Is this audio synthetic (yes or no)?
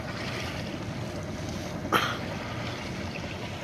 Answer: no